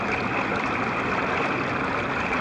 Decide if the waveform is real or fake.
real